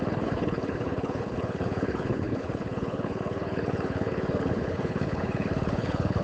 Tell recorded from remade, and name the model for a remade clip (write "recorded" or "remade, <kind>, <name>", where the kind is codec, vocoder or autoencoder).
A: remade, codec, HILCodec